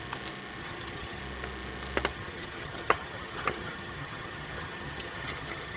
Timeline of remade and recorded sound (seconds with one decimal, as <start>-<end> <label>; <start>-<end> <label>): 0.0-0.6 recorded; 0.6-1.2 remade; 1.2-2.1 recorded; 2.1-5.8 remade